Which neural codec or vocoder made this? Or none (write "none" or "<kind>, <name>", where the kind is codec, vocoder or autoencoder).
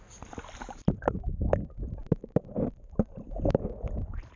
none